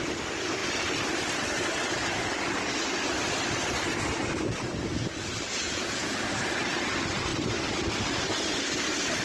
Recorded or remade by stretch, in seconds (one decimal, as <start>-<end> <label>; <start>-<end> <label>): 0.0-5.5 recorded; 5.5-6.3 remade; 6.3-9.2 recorded

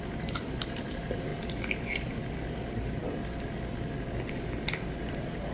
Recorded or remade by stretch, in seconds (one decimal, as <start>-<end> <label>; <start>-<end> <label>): 0.0-1.3 remade; 1.3-2.5 recorded; 2.5-3.0 remade; 3.0-5.1 recorded; 5.1-5.5 remade

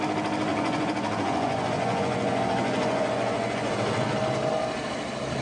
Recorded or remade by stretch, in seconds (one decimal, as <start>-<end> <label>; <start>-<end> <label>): 0.0-0.5 recorded; 0.5-3.7 remade; 3.7-5.4 recorded

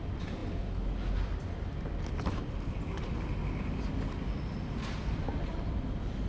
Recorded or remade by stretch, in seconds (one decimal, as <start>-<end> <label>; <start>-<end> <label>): 0.0-6.3 recorded